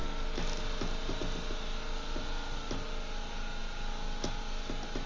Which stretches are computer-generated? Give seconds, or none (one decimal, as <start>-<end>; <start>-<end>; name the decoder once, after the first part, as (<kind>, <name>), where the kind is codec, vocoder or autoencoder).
none